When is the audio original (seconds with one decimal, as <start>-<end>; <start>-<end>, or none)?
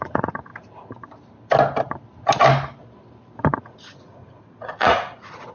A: 0.5-3.6